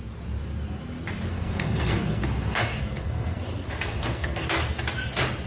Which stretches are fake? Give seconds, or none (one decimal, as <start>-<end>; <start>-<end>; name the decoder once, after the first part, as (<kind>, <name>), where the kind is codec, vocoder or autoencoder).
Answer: 1.3-4.6 (codec, SNAC)